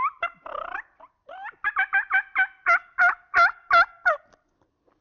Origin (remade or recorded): recorded